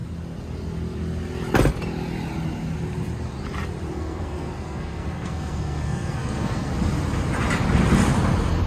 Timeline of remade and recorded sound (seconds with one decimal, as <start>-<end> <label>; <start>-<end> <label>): 0.0-3.9 recorded; 3.9-6.7 remade; 6.7-8.7 recorded